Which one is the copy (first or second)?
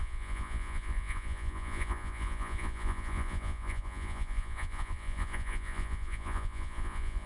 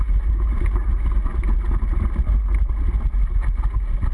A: first